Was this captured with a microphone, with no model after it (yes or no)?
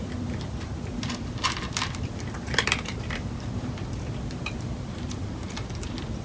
no